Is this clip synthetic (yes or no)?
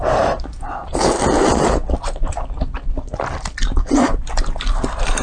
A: no